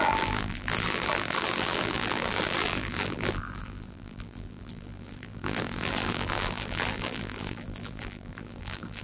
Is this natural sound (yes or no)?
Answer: no